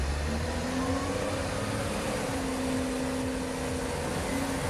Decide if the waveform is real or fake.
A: real